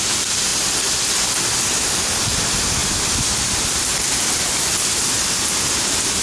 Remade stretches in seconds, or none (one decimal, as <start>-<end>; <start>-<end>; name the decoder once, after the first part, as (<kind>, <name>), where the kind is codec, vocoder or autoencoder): 0.0-6.2 (vocoder, BigVGAN v2)